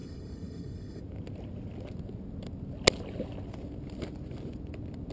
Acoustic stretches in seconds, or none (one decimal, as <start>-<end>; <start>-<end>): 1.0-5.1